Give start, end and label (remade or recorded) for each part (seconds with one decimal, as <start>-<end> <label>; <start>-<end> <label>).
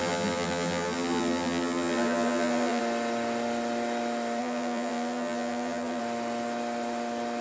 0.0-2.8 remade; 2.8-4.4 recorded; 4.4-6.0 remade; 6.0-7.4 recorded